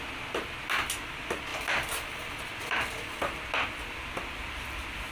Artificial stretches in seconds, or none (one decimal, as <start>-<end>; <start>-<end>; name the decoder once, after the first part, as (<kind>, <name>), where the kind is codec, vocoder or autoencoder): none